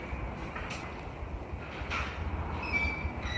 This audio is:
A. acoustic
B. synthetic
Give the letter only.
A